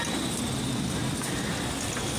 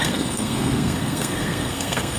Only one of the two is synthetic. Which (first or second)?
second